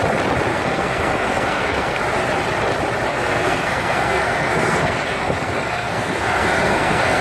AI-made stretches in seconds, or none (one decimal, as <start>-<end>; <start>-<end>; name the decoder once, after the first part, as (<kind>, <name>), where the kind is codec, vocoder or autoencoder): 0.5-2.0 (codec, SNAC); 3.1-7.2